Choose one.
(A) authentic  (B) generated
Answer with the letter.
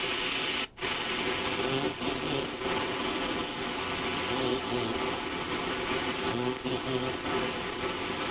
A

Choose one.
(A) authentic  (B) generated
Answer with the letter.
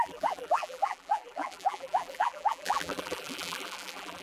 B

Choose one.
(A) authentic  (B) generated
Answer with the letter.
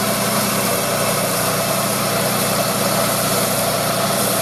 B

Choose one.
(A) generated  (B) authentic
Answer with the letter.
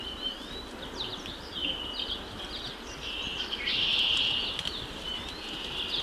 B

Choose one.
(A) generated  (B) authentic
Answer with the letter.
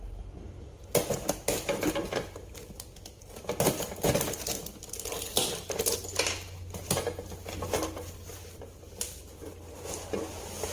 B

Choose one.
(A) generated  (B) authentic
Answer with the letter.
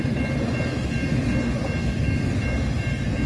B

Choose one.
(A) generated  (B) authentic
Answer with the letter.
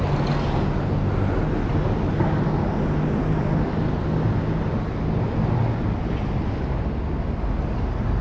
B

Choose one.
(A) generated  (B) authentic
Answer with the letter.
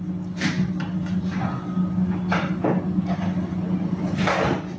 B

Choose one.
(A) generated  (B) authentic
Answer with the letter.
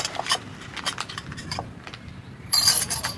A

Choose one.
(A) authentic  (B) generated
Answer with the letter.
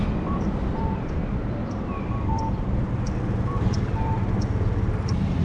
B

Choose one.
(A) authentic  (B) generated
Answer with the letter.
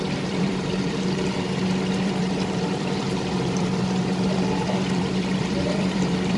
B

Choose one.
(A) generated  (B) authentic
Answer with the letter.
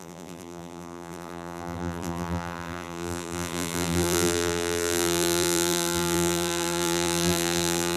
A